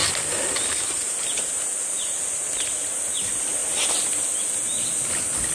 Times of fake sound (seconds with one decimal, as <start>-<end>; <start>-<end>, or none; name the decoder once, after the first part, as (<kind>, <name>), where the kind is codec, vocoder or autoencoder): none